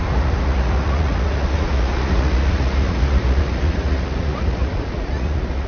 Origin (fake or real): fake